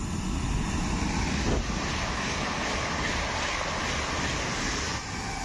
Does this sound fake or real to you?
real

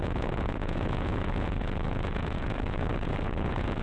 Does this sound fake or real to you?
fake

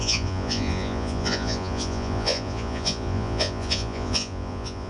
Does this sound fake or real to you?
fake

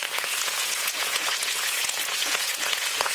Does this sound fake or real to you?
fake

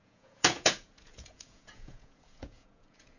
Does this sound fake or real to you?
fake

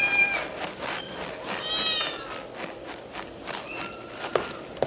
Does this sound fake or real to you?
real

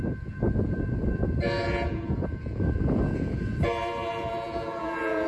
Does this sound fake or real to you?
fake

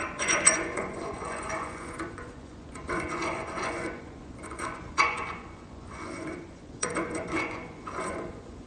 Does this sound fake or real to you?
fake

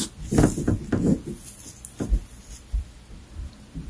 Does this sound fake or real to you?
real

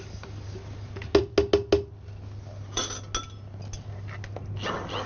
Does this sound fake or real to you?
real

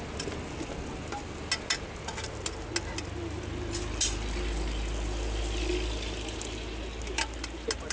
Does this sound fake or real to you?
real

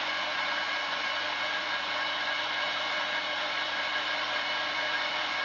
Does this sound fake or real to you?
fake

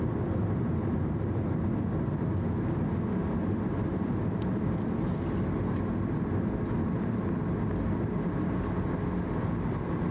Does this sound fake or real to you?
real